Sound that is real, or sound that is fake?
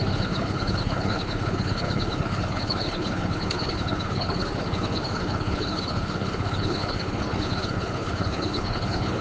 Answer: fake